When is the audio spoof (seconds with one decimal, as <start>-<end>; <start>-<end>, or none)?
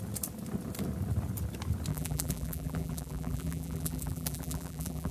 1.9-5.1